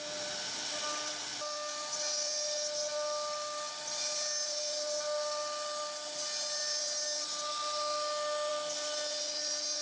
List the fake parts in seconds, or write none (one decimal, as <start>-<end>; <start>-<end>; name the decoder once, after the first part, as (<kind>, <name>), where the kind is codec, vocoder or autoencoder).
none